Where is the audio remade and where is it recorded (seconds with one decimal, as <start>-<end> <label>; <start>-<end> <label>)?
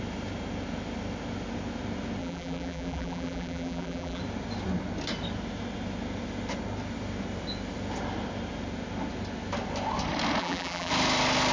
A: 0.0-2.2 recorded; 2.2-4.2 remade; 4.2-10.4 recorded; 10.4-10.9 remade; 10.9-11.5 recorded